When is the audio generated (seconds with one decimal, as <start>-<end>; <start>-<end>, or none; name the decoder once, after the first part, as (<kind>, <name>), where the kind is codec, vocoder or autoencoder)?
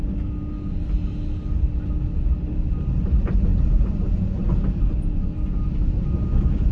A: none